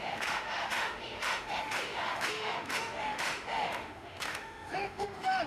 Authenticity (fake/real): fake